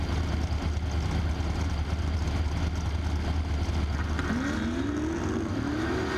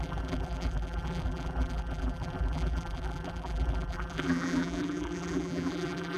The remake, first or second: second